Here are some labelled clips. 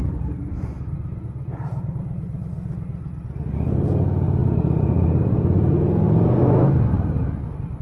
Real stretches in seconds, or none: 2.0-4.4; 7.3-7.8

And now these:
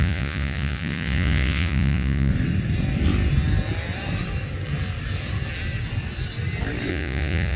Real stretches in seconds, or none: 2.3-6.9

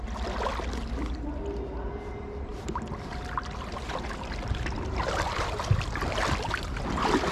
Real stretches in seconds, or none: 0.0-7.3